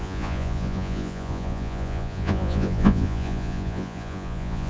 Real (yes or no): no